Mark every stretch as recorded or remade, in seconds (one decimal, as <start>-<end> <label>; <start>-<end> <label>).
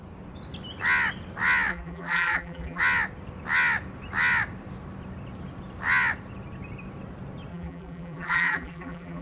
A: 0.0-1.7 recorded; 1.7-2.8 remade; 2.8-7.5 recorded; 7.5-9.2 remade